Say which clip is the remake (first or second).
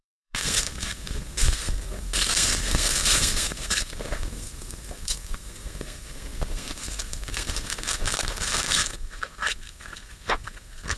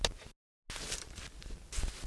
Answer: first